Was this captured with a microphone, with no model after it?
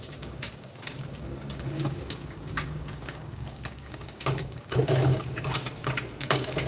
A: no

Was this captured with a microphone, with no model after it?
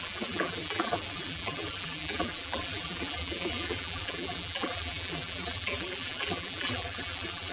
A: no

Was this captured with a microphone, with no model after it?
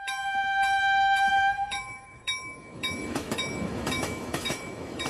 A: no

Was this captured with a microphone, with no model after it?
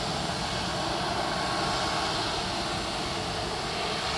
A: yes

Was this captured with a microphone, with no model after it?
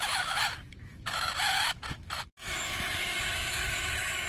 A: no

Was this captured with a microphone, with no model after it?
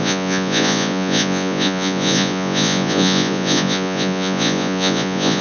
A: no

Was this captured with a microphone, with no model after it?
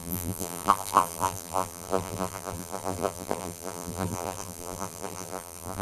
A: no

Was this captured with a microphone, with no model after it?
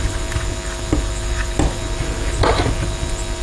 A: yes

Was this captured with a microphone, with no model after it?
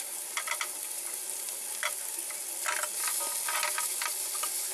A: yes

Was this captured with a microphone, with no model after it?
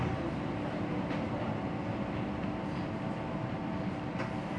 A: yes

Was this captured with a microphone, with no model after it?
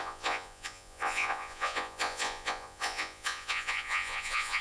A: no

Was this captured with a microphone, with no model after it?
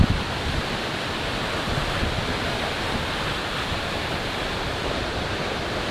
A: no